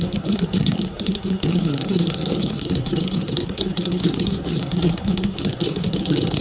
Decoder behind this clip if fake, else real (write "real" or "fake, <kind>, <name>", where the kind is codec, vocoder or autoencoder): fake, codec, SNAC